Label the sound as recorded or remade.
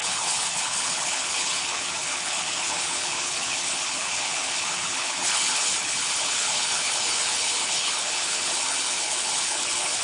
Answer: remade